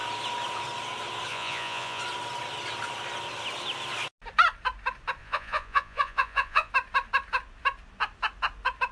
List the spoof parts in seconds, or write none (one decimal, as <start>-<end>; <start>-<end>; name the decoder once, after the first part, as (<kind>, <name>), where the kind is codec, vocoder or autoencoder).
1.3-2.0 (vocoder, Vocos); 5.2-6.7

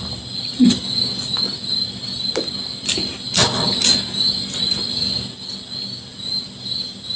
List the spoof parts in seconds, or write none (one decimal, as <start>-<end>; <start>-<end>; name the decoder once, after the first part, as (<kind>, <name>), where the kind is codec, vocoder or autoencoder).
6.1-6.7 (vocoder, BigVGAN v2)

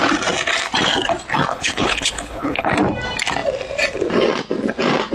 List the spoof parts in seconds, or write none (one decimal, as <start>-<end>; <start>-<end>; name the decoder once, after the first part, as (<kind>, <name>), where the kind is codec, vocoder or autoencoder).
1.5-2.7 (codec, HILCodec)

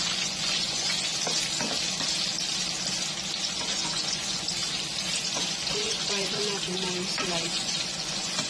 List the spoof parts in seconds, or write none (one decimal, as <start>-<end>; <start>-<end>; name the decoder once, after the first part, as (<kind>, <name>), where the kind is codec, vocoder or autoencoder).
0.0-1.1 (vocoder, Vocos); 3.4-4.6; 5.2-6.4; 7.2-8.5

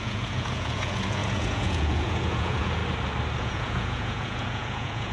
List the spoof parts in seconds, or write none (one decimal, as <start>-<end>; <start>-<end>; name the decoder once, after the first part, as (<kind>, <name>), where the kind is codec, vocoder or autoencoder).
0.0-2.8 (vocoder, Vocos); 3.4-5.1

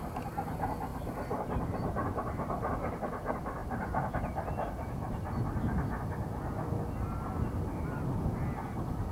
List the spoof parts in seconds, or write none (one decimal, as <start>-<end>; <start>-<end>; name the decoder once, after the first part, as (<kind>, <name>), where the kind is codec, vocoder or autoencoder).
0.9-3.0 (vocoder, BigVGAN v2)